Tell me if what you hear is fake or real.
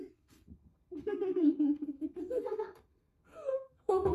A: fake